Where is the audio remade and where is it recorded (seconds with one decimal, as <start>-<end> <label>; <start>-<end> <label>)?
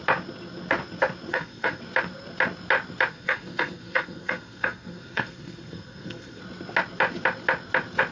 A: 0.0-1.3 recorded; 1.3-1.8 remade; 1.8-3.1 recorded; 3.1-6.4 remade; 6.4-8.1 recorded